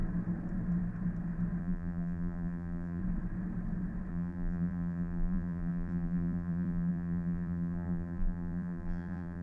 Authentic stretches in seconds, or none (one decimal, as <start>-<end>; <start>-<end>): 0.0-1.6; 3.0-4.1